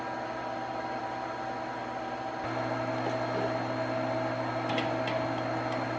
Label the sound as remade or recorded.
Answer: recorded